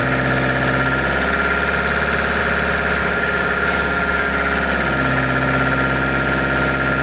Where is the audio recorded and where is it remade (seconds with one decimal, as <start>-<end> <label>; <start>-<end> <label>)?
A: 0.0-3.0 recorded; 3.0-4.3 remade; 4.3-7.0 recorded